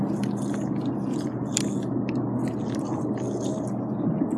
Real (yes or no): yes